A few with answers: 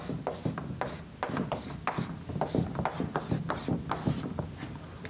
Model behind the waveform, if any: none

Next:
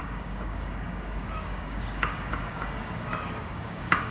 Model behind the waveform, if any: codec, DAC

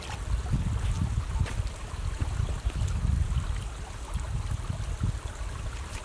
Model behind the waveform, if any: none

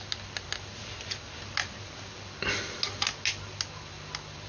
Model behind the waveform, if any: none